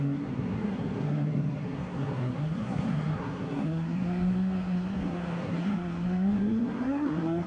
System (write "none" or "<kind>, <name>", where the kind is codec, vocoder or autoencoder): codec, SNAC